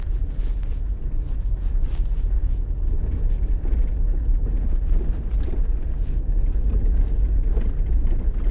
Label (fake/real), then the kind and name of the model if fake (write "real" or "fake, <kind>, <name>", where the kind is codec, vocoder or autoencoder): real